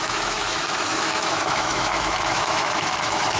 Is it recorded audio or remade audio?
remade